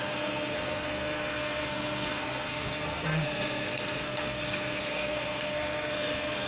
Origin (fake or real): fake